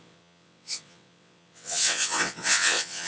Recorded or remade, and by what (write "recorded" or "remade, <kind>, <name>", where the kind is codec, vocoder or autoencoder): remade, vocoder, WaveNeXt